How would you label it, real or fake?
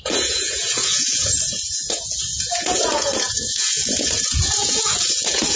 fake